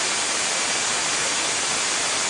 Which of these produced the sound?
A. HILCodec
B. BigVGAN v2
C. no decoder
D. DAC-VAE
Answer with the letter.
C